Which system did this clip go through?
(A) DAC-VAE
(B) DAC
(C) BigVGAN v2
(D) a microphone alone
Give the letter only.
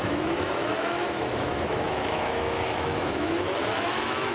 A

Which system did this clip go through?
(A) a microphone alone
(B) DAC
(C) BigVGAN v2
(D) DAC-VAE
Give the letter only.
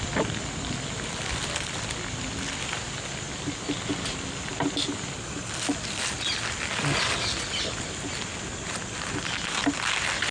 A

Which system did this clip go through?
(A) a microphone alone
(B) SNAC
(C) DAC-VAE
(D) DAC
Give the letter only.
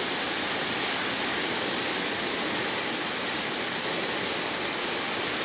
A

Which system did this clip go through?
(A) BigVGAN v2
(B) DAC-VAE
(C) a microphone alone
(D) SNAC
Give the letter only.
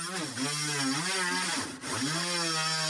C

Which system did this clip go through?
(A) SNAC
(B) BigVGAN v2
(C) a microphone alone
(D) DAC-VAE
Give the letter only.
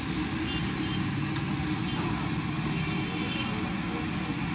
C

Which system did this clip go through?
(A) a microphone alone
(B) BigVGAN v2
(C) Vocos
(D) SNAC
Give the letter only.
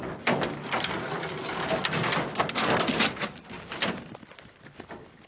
A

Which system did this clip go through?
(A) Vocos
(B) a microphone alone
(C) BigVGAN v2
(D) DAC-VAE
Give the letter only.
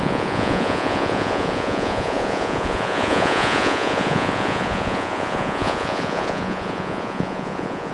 A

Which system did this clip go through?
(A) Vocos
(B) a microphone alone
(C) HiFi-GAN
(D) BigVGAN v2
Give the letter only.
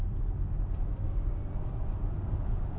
B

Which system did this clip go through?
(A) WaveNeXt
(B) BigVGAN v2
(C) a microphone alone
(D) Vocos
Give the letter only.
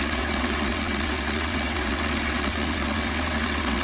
A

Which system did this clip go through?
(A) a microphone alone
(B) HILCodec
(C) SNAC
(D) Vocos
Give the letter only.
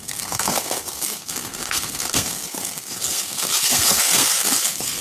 C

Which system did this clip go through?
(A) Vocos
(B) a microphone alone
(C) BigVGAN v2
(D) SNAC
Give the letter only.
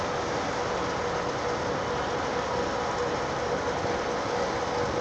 B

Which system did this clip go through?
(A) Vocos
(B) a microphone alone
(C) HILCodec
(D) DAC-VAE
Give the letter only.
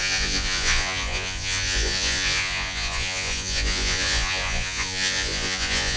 A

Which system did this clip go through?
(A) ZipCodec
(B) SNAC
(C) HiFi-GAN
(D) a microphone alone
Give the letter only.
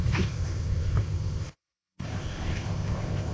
A